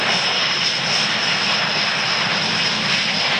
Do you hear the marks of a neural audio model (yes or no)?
no